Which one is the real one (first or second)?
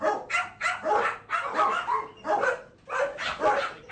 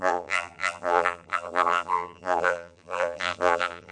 first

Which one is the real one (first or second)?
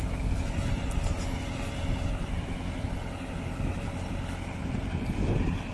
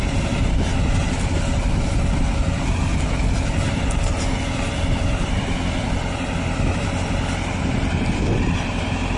first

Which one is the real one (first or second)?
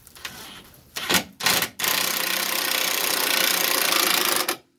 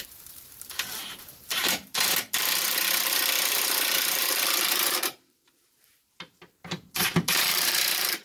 first